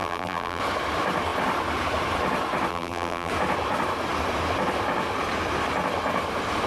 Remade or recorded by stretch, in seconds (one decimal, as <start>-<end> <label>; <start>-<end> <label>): 0.0-0.6 remade; 0.6-2.7 recorded; 2.7-3.3 remade; 3.3-6.7 recorded

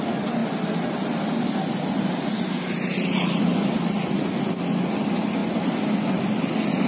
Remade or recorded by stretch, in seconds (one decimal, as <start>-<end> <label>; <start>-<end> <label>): 0.0-6.9 recorded

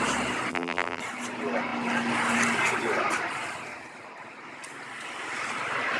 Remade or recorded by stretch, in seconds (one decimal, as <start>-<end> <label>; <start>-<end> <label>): 0.0-0.5 recorded; 0.5-1.0 remade; 1.0-6.0 recorded